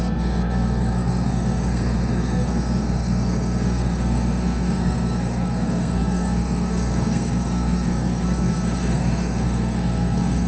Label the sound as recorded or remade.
remade